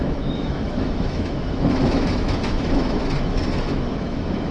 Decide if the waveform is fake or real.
fake